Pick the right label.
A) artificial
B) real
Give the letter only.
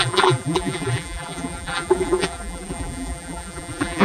A